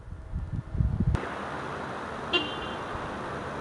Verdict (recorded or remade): recorded